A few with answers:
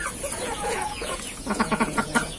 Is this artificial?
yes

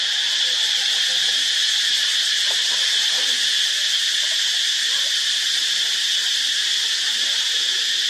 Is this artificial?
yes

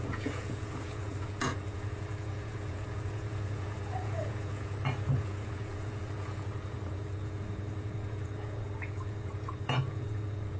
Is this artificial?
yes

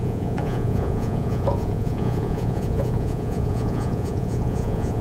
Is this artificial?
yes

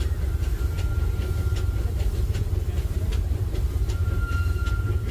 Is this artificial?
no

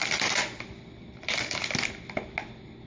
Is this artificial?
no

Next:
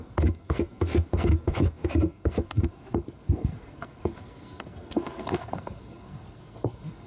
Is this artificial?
yes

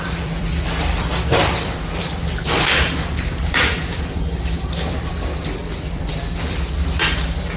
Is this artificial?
yes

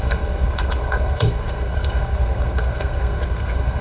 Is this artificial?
yes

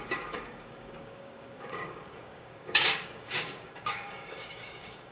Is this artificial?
yes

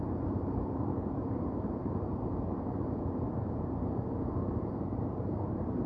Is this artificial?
yes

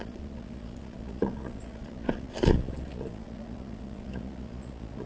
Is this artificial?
yes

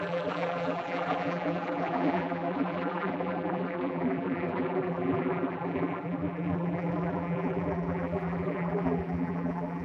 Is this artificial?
yes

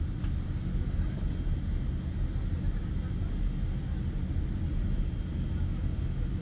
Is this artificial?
no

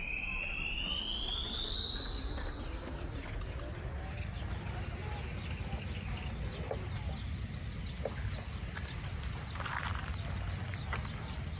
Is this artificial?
no